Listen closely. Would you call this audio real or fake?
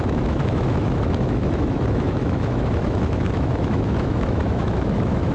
fake